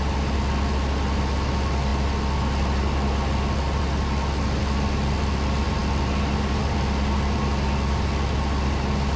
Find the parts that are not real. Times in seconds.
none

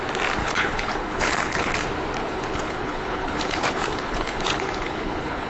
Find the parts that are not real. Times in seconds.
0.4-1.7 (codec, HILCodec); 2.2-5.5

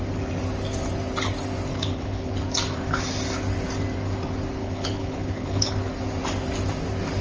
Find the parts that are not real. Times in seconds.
1.7-2.3 (codec, HILCodec); 4.6-5.7

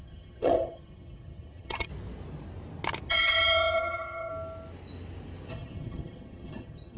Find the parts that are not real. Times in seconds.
0.0-1.9 (vocoder, HiFi-GAN); 3.1-4.3; 5.5-7.0

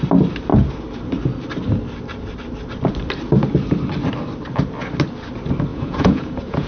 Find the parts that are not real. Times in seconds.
5.7-6.7 (vocoder, Vocos)